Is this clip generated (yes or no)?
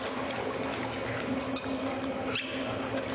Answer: no